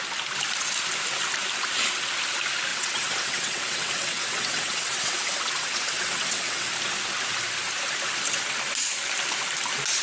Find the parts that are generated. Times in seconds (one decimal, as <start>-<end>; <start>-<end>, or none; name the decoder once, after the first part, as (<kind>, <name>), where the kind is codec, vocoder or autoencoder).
2.7-6.7 (vocoder, WaveNeXt)